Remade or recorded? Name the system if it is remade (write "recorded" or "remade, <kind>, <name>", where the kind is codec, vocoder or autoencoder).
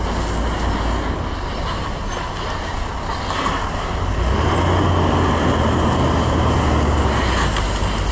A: recorded